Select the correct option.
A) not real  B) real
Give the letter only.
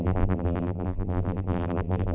A